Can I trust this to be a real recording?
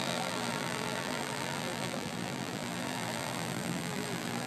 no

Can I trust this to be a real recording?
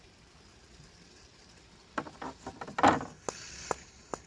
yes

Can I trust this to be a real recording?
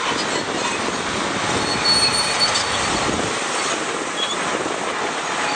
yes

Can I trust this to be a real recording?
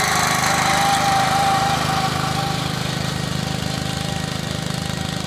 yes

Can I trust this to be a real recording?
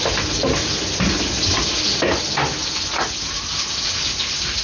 yes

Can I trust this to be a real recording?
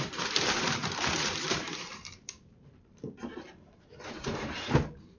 no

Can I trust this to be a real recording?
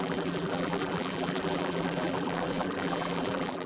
no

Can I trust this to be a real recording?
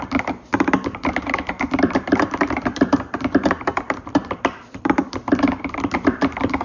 no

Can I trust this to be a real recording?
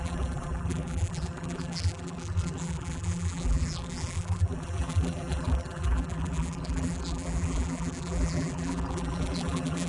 no